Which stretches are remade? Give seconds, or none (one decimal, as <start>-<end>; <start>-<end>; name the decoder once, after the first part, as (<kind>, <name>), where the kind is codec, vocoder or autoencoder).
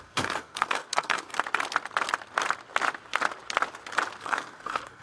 0.0-1.3 (codec, SNAC); 4.2-5.0